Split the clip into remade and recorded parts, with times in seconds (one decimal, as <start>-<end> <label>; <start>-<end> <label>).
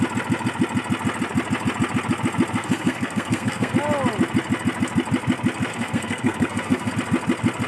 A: 0.0-2.6 recorded; 2.6-3.7 remade; 3.7-5.7 recorded; 5.7-6.9 remade; 6.9-7.7 recorded